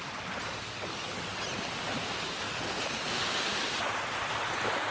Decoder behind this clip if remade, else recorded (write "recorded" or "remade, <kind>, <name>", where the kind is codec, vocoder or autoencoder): recorded